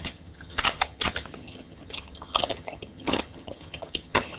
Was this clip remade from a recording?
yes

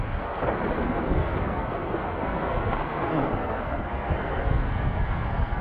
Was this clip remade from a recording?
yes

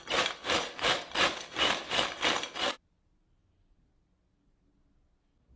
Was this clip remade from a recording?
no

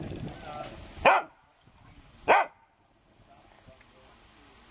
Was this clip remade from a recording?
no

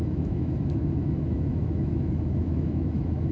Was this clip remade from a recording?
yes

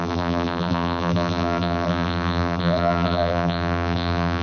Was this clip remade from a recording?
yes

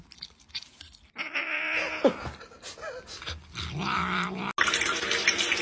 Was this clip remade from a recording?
no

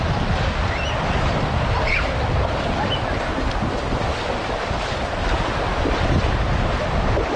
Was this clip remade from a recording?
no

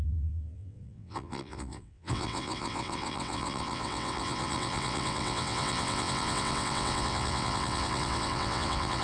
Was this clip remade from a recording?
yes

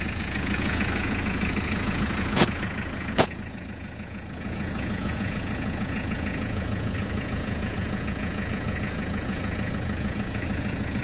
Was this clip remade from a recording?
yes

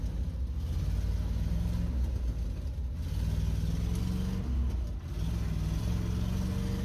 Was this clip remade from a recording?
no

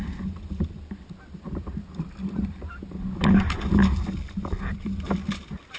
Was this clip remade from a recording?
no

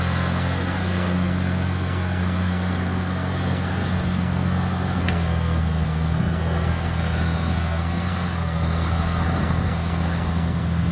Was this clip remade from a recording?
yes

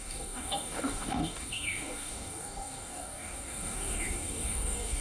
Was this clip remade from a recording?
yes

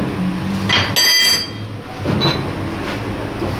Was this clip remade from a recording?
no